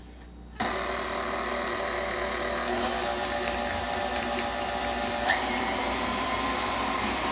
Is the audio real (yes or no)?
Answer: yes